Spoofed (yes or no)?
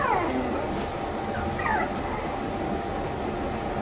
no